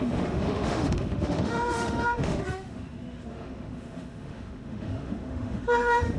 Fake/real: fake